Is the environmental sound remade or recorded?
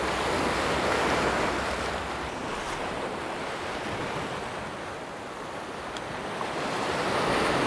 recorded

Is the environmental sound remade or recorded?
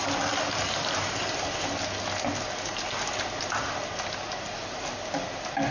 recorded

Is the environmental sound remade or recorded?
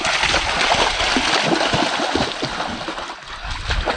recorded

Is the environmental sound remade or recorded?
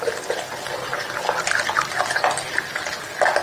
recorded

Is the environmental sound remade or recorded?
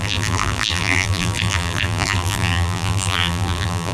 remade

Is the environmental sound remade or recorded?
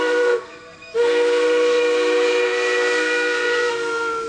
remade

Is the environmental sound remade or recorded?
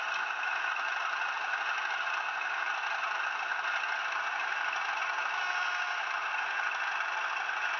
recorded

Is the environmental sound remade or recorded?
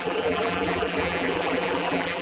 remade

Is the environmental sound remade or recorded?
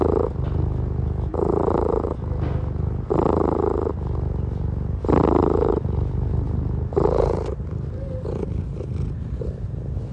recorded